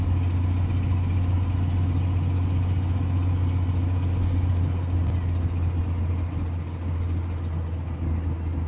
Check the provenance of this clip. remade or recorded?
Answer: recorded